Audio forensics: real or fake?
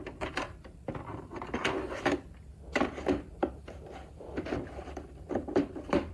real